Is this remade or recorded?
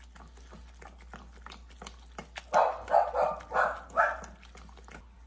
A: recorded